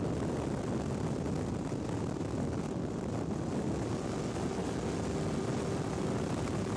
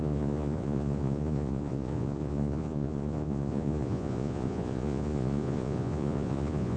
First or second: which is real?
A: first